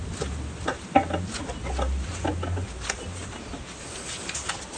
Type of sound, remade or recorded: recorded